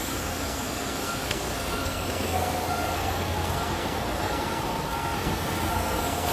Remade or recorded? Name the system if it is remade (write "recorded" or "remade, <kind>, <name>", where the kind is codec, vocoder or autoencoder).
remade, codec, SNAC